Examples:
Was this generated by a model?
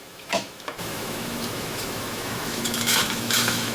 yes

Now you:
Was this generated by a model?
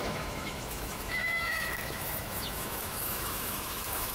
yes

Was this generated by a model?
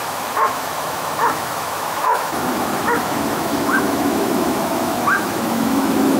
yes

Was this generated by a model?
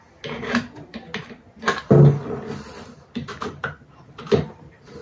no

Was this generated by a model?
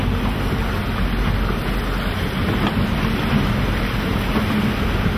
no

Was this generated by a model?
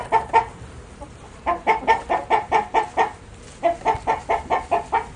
no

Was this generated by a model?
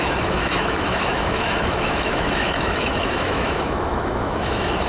yes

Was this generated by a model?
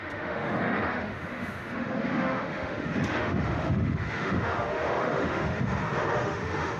yes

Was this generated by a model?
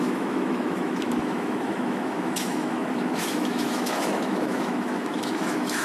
yes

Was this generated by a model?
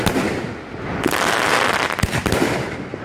no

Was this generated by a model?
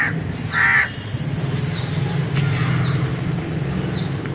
no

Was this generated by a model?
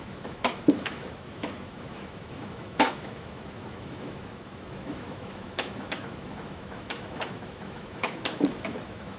yes